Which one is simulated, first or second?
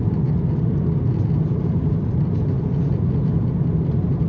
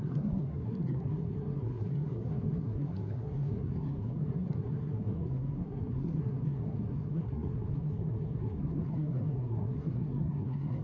second